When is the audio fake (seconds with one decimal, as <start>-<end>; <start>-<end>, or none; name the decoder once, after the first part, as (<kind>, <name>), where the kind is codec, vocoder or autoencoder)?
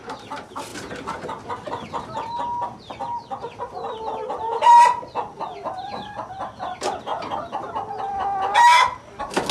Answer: none